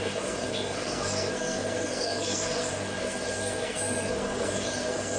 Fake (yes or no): yes